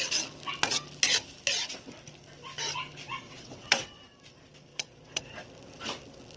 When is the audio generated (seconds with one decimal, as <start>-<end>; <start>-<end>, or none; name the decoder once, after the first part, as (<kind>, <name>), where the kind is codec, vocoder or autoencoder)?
3.1-4.0 (vocoder, WaveNeXt); 4.7-5.2